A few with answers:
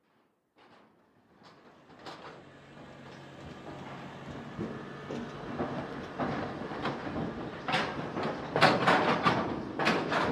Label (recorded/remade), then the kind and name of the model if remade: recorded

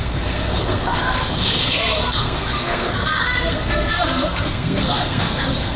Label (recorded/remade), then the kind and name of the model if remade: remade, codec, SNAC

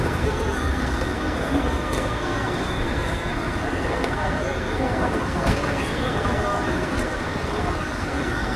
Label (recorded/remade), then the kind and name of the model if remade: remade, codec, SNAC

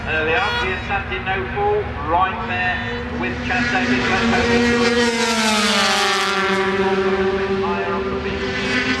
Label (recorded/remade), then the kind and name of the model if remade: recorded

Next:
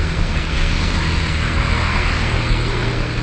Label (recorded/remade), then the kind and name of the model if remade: remade, codec, SNAC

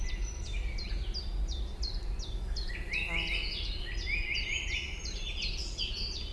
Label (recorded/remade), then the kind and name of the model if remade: recorded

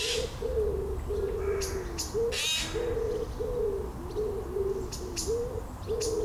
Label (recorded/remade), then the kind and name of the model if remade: recorded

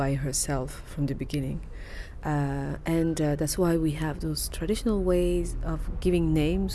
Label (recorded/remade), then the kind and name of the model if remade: recorded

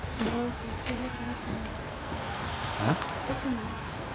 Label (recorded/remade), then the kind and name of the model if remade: remade, codec, SNAC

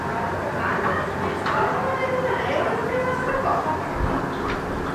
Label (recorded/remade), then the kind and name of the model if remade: recorded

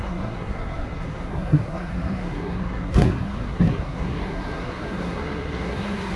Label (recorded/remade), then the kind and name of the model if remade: remade, codec, SNAC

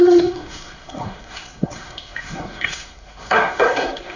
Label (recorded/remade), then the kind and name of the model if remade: remade, codec, SNAC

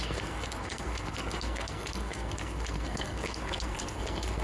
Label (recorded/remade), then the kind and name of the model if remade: remade, codec, SNAC